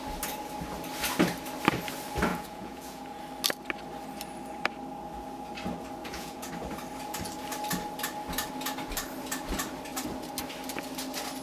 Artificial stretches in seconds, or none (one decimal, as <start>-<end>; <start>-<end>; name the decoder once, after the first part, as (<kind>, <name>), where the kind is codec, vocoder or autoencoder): 2.3-3.2 (vocoder, Vocos); 6.0-6.5